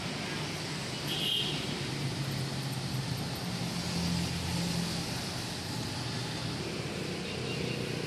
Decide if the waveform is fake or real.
real